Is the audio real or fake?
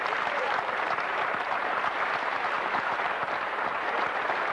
fake